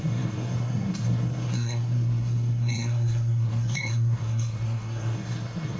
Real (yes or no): no